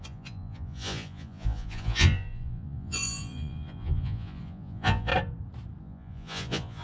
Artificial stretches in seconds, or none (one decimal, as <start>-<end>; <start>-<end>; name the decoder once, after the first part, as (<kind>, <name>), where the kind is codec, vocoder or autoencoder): 0.0-5.1 (vocoder, Vocos); 5.8-6.8